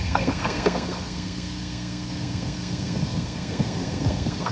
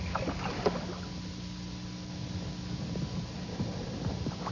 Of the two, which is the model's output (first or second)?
first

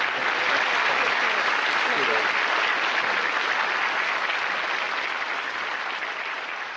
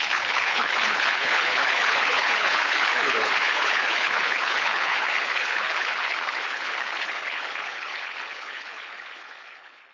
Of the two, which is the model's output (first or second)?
second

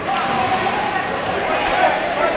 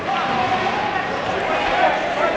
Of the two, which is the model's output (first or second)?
first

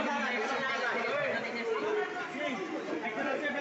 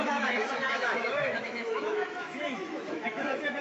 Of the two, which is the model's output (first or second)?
second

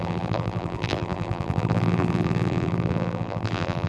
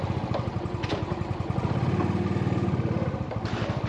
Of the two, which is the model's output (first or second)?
first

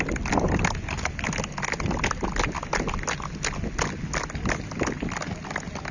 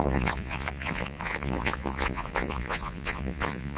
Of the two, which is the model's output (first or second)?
second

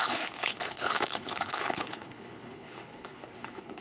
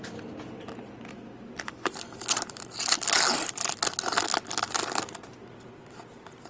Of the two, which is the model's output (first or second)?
first